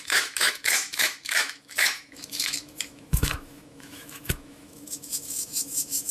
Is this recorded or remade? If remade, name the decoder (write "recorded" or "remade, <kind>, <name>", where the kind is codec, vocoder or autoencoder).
remade, autoencoder, DAC-VAE